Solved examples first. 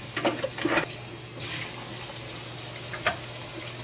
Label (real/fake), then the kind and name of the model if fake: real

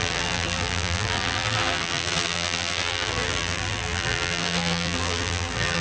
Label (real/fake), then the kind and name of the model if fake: fake, vocoder, BigVGAN v2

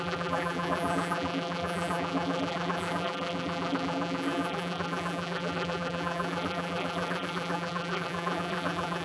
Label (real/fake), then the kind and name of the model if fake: fake, vocoder, BigVGAN v2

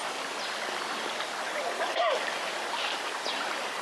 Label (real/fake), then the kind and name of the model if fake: real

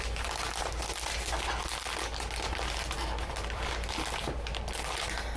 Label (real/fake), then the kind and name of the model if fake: real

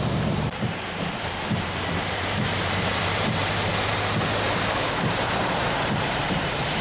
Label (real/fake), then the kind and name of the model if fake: fake, vocoder, BigVGAN v2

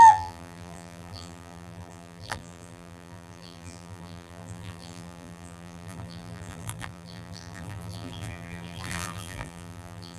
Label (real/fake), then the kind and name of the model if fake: fake, vocoder, BigVGAN v2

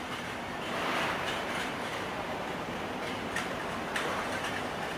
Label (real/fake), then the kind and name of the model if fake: fake, vocoder, BigVGAN v2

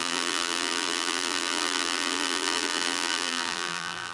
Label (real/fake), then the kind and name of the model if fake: fake, vocoder, BigVGAN v2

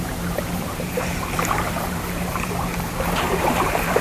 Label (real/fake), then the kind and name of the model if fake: fake, vocoder, BigVGAN v2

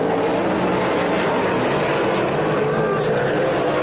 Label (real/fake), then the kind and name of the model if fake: real